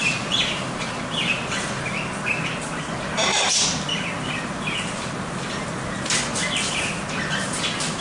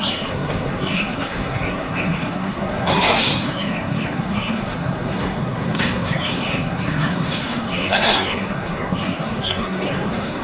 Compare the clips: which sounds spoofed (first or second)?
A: second